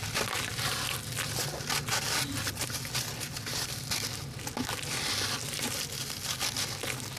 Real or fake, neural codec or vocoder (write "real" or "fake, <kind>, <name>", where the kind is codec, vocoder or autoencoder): real